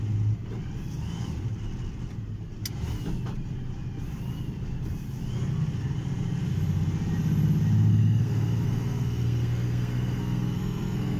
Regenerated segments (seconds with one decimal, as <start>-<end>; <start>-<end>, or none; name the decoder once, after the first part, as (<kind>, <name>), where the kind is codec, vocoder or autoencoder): 7.9-11.2 (codec, SNAC)